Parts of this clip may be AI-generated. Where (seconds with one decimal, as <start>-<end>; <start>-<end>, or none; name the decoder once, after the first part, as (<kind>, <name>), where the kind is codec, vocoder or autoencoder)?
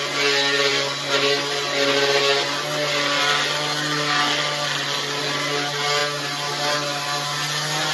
none